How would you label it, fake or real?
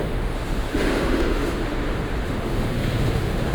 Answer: fake